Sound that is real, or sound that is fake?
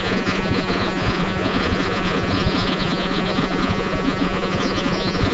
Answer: fake